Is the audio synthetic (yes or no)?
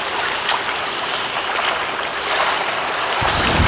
no